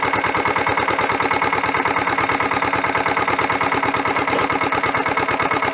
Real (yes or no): yes